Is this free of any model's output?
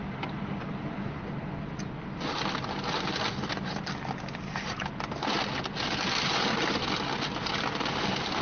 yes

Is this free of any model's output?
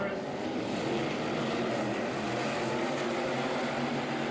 yes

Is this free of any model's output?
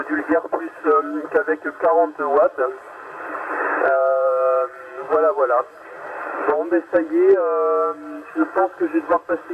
yes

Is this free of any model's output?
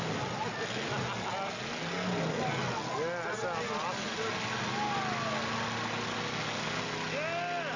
yes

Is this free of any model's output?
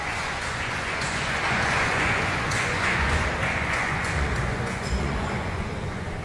no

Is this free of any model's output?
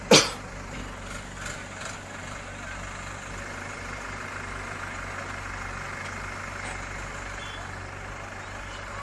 yes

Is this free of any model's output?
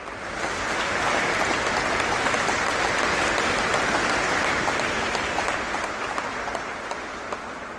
yes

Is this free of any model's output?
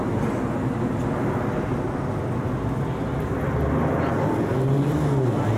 yes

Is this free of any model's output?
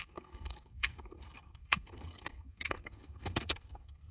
no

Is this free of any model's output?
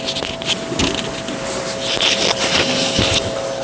yes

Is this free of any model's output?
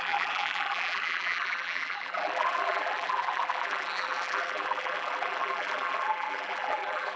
no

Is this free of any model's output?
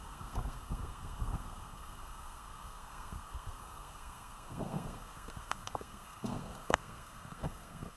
no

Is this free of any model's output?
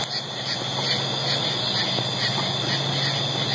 yes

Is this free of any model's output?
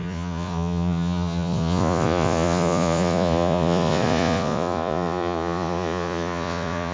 no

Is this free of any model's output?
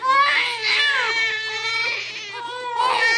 yes